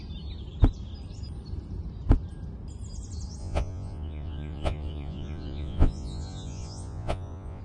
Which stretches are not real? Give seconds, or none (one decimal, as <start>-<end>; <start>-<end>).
3.4-7.6